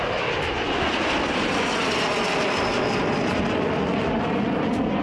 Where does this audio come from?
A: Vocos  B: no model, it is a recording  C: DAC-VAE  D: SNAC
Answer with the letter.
B